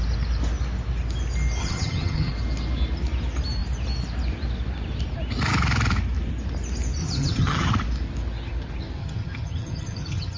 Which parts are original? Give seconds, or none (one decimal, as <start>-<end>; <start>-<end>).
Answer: 0.0-1.6; 2.3-7.0; 7.7-9.0